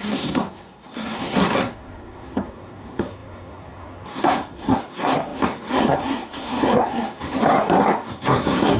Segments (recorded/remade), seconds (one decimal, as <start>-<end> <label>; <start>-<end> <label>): 0.0-8.8 remade